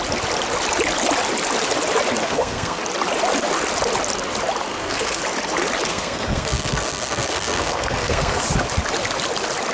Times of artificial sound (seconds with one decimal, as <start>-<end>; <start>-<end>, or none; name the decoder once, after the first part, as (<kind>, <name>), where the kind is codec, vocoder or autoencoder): 2.2-2.8 (codec, SNAC); 4.7-5.2; 5.9-8.4